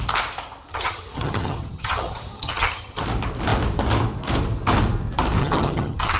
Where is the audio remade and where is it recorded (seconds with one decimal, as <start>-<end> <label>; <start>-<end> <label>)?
0.0-0.7 recorded; 0.7-3.0 remade; 3.0-5.4 recorded; 5.4-6.2 remade